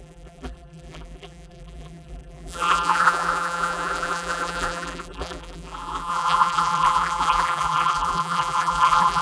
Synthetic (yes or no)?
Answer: yes